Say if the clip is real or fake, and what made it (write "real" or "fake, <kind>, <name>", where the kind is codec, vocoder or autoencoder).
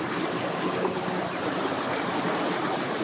real